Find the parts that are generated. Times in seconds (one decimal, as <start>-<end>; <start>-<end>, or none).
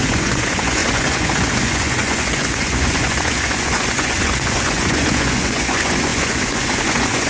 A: 0.0-7.3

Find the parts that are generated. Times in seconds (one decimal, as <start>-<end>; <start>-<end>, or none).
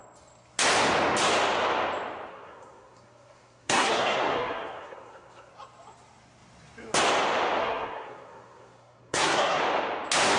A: 2.3-5.5; 7.6-9.6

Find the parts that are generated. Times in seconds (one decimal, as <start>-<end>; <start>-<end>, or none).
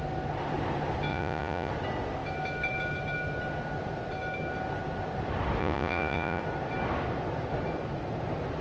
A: 1.1-1.7; 5.6-6.4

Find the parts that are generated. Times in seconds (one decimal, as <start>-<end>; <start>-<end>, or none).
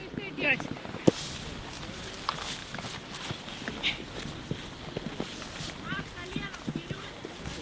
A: none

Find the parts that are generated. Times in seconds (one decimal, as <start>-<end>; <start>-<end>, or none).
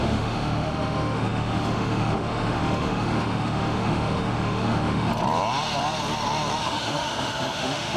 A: 0.0-5.1; 6.6-8.0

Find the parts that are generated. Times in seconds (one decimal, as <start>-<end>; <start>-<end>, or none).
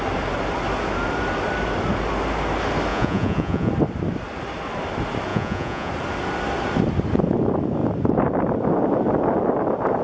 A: 2.9-3.7; 5.3-5.9